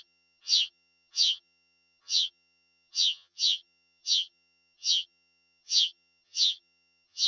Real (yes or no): no